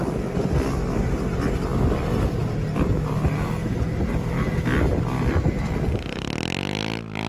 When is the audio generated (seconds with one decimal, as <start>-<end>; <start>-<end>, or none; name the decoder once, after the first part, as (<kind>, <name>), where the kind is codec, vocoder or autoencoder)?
3.6-4.4 (vocoder, BigVGAN v2)